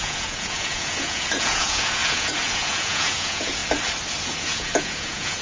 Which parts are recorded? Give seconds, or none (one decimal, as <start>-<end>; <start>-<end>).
3.6-4.2